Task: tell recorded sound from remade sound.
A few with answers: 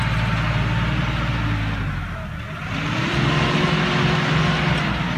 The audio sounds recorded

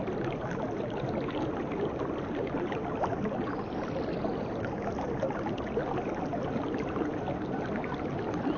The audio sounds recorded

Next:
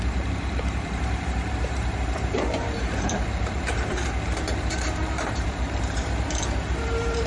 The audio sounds remade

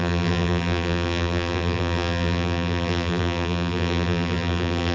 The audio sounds remade